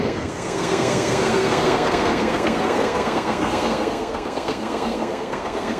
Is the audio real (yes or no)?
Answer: no